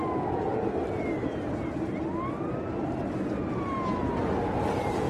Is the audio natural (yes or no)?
yes